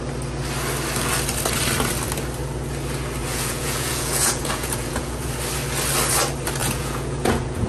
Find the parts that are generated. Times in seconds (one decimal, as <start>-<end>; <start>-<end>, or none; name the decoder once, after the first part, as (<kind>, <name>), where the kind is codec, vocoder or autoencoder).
3.2-5.3 (vocoder, Vocos); 6.6-7.7